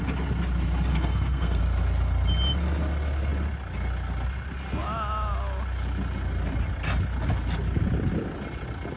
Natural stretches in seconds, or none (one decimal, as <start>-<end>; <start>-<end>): 0.0-0.9; 1.6-9.0